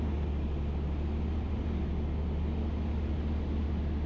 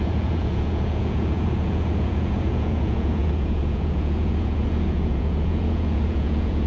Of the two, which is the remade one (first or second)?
second